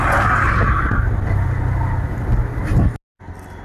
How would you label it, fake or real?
real